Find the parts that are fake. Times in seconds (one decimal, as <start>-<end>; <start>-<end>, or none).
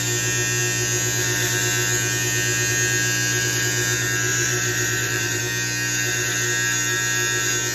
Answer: 4.3-5.4